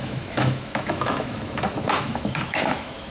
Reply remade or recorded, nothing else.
remade